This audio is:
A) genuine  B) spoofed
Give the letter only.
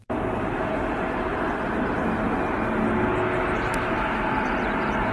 A